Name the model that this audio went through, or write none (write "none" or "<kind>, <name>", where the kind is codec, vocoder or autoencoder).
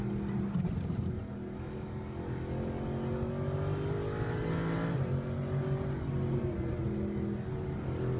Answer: none